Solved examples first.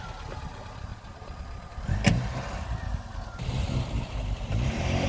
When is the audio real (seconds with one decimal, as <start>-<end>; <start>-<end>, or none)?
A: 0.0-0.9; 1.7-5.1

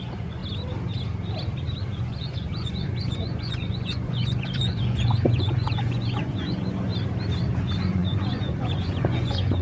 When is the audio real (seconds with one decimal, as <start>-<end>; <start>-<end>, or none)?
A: 0.4-2.0; 6.9-7.5

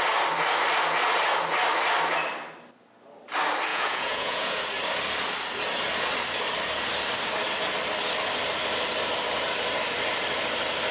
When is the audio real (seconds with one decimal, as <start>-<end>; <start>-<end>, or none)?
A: 0.0-3.7; 4.6-10.9

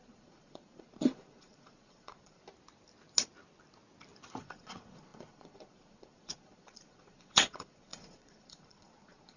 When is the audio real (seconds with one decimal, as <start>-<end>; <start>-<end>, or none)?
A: 2.4-4.4

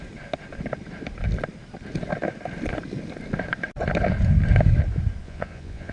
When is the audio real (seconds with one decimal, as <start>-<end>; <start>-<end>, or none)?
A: 0.0-5.2